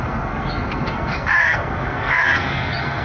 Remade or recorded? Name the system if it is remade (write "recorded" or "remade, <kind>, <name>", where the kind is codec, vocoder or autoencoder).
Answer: remade, codec, SNAC